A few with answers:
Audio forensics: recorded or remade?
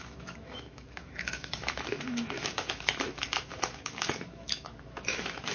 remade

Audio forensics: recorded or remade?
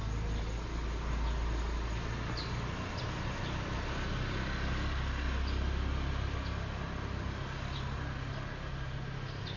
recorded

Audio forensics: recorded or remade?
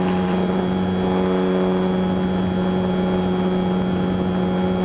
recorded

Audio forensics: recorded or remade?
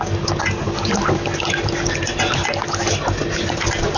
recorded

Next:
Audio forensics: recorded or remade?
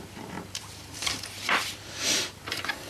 remade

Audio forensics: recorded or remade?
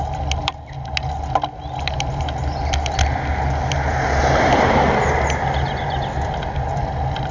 recorded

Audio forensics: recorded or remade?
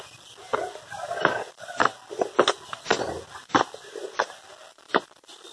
recorded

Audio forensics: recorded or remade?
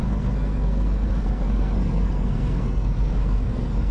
remade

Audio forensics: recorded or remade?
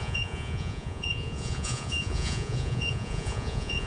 remade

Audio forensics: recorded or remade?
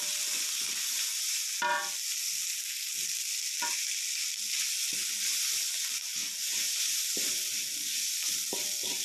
recorded